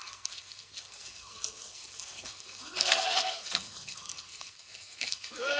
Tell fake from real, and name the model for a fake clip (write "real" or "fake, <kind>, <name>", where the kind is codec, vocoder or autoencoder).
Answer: fake, codec, SNAC